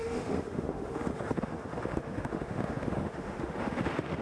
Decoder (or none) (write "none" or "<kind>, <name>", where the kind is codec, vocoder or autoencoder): autoencoder, DAC-VAE